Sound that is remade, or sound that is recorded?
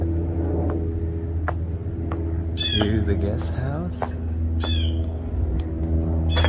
recorded